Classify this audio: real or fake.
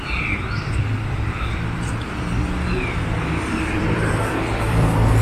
fake